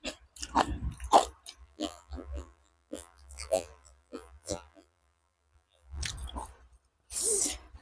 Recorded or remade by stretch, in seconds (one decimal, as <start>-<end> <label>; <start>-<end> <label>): 0.0-1.6 recorded; 1.6-6.0 remade; 6.0-7.8 recorded